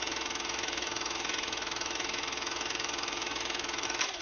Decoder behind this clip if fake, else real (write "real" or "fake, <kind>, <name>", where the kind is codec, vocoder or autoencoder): fake, autoencoder, DAC-VAE